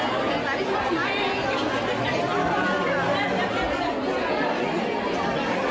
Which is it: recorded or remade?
recorded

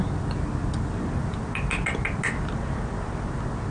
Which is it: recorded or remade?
recorded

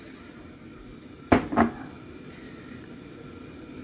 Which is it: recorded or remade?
recorded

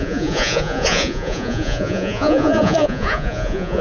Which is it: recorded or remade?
remade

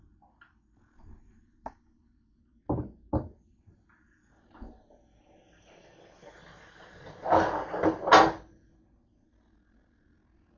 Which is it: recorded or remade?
recorded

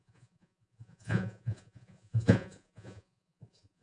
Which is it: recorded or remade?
remade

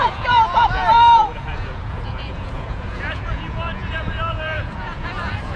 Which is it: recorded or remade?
remade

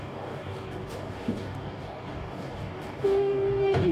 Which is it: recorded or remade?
remade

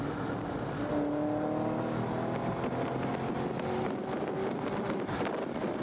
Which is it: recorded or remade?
recorded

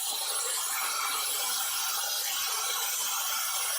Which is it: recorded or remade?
recorded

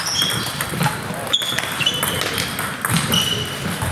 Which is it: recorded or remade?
recorded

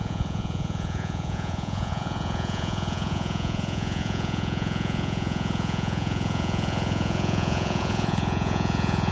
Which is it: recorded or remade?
remade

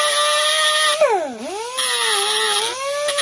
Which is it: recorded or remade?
recorded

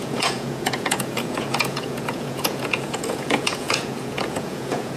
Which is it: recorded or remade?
remade